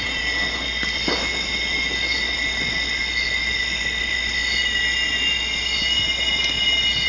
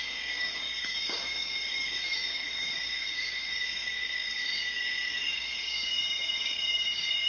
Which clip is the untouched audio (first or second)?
first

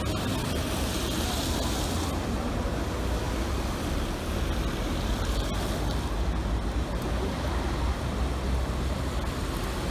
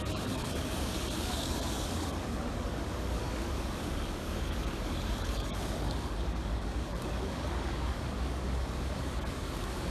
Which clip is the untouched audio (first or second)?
first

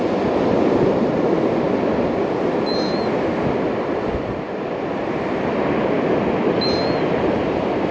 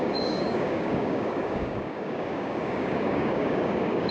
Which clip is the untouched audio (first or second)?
first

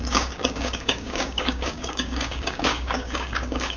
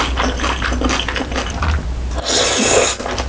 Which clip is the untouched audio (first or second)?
second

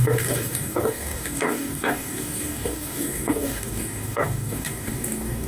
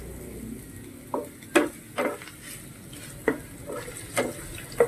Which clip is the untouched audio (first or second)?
second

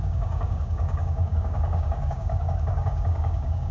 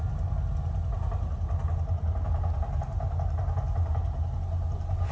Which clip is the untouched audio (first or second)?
second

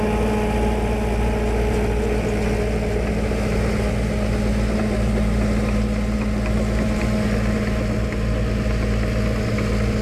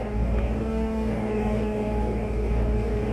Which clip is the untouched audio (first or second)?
first